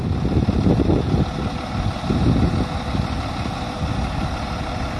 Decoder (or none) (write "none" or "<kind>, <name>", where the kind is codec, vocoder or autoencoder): none